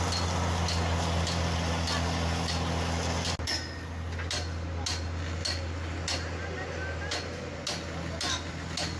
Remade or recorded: recorded